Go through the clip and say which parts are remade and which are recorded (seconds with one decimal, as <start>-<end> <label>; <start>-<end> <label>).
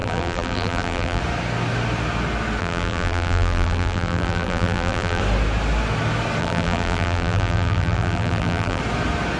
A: 0.0-1.2 remade; 1.2-2.6 recorded; 2.6-5.2 remade; 5.2-6.4 recorded; 6.4-8.8 remade; 8.8-9.4 recorded